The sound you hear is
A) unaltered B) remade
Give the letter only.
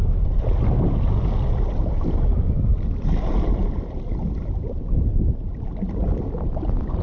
A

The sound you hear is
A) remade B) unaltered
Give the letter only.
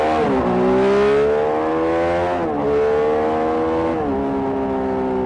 B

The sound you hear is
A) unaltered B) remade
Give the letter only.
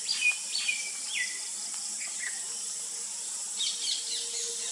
A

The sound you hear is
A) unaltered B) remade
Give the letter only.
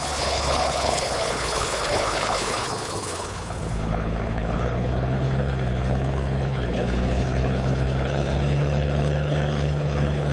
B